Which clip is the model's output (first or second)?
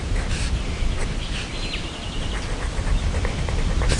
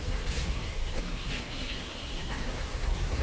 second